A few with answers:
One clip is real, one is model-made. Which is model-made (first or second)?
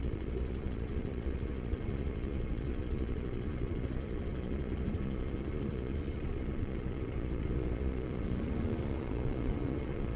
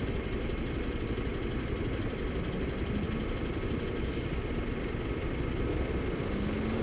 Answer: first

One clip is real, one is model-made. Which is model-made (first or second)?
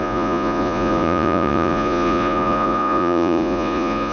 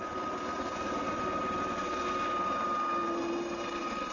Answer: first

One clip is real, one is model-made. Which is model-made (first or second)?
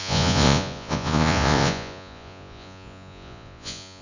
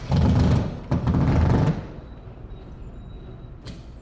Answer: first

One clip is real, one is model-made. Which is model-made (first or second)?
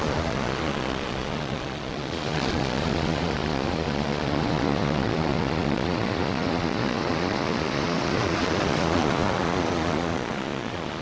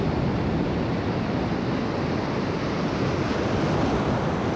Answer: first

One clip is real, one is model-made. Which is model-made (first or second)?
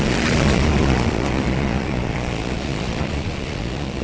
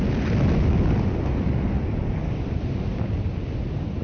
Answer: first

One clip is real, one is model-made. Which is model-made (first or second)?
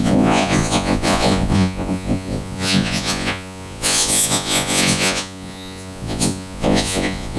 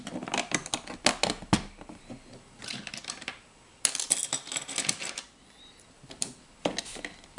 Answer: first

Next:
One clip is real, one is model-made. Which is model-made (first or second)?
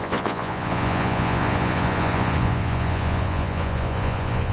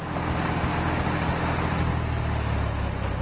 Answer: first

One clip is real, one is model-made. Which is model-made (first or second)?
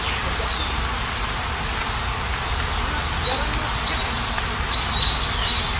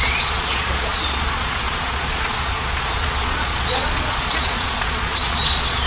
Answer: second